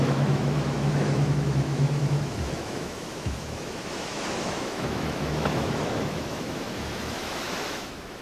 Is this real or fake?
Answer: fake